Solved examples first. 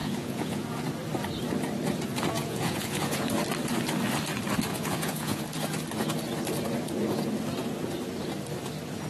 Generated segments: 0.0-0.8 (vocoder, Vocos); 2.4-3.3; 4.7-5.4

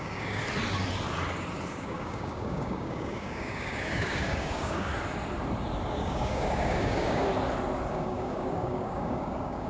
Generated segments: 0.0-0.4 (codec, DAC); 1.7-4.9; 5.9-7.3; 7.9-9.7

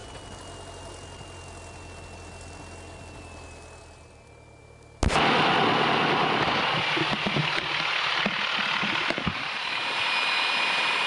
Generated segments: none

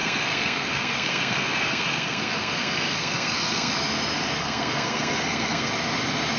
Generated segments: 0.0-3.7 (codec, SNAC); 4.4-5.7

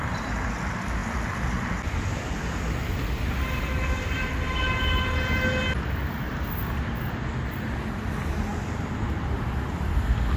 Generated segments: none